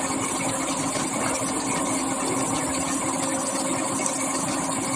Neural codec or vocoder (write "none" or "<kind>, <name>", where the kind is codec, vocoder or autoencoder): none